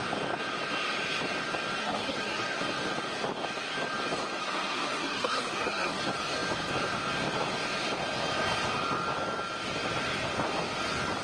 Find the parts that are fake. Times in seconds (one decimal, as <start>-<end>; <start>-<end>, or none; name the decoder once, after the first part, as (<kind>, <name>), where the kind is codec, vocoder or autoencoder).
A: 1.8-2.6 (codec, SNAC); 4.4-6.0